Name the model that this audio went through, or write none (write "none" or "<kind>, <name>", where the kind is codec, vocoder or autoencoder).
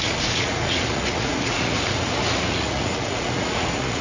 vocoder, Vocos